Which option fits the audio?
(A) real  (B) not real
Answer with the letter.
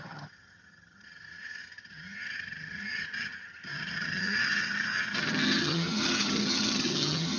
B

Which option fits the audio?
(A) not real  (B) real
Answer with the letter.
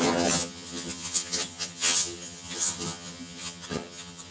A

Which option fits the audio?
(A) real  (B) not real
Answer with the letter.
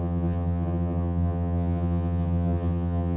B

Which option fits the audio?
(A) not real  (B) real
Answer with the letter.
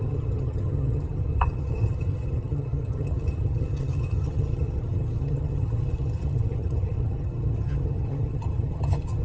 A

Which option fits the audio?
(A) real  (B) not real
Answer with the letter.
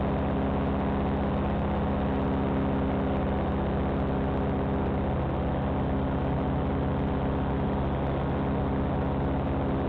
A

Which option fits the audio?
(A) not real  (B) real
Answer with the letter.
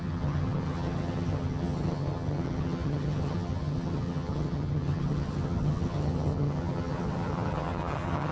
A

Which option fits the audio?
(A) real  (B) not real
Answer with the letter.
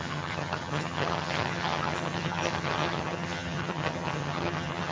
B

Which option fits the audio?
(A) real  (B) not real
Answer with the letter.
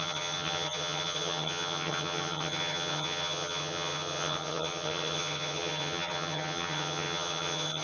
B